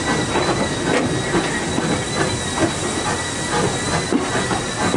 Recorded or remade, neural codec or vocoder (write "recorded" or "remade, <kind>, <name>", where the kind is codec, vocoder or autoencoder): recorded